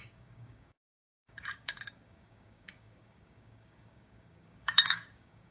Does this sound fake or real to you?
fake